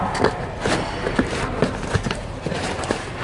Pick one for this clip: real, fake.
real